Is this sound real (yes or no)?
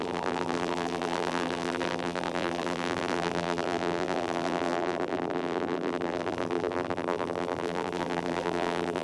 no